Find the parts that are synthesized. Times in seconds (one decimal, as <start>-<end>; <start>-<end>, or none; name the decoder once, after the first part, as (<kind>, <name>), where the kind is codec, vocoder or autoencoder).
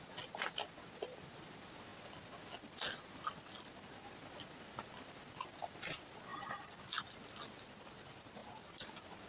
6.3-6.9 (vocoder, BigVGAN v2)